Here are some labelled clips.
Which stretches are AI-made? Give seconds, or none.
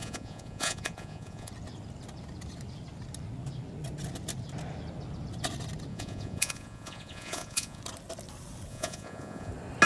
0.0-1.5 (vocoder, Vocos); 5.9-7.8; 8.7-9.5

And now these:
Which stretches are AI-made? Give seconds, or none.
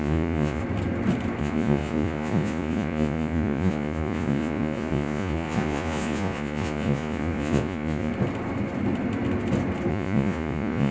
0.0-0.6 (vocoder, Vocos); 1.4-8.1; 9.9-10.9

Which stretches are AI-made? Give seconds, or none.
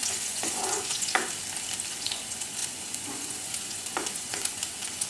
0.0-1.2 (vocoder, Vocos); 1.9-5.1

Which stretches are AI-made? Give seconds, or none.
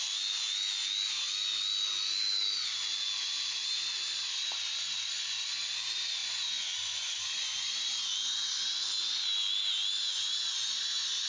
6.2-7.7 (vocoder, Vocos)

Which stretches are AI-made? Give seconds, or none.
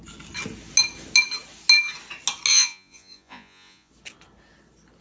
2.5-3.9 (vocoder, Vocos)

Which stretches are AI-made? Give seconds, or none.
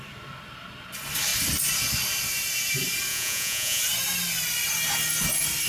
3.1-3.8 (vocoder, Vocos)